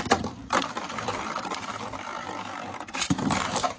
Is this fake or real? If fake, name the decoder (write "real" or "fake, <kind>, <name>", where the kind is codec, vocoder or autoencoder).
fake, vocoder, BigVGAN v2